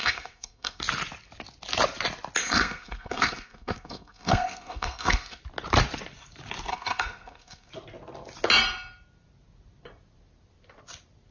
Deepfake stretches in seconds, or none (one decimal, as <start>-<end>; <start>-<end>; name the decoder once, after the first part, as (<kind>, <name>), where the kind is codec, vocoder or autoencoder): 0.0-0.8 (codec, SNAC); 2.4-5.4; 6.7-7.7

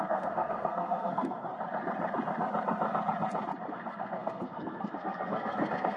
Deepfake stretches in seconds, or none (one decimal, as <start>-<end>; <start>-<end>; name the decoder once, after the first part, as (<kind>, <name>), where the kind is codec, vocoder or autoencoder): 0.0-1.5 (codec, SNAC); 3.7-6.0

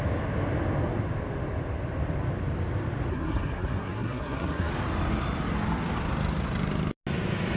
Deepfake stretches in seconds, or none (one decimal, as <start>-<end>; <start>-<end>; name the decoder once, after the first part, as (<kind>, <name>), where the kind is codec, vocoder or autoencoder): 3.1-4.7 (codec, SNAC)

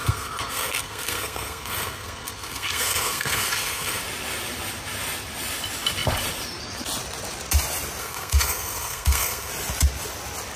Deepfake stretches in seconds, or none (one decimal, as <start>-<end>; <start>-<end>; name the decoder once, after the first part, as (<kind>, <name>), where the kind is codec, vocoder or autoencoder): 0.0-4.0 (codec, SNAC); 8.0-9.5

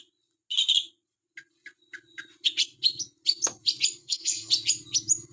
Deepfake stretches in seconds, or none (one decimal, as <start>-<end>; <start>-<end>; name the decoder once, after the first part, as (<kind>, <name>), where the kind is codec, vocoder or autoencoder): 4.0-4.5 (codec, SNAC)

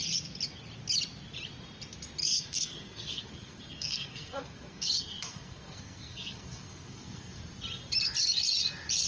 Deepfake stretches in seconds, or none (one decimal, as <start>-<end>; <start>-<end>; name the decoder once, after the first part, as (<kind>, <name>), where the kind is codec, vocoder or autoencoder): 2.2-7.4 (codec, SNAC)

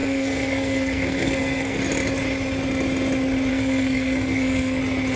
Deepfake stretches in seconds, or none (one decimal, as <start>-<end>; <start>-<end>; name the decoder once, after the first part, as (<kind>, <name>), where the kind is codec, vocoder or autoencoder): 0.0-1.8 (codec, SNAC); 3.5-4.8

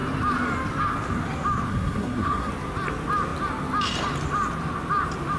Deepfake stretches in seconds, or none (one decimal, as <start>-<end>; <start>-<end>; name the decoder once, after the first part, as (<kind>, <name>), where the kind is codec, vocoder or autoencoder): 1.7-2.5 (codec, SNAC)